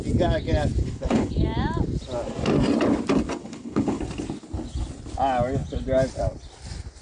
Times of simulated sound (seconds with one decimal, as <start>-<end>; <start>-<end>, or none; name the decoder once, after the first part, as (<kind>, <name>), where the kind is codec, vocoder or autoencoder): 0.8-1.3 (codec, HILCodec); 3.4-4.0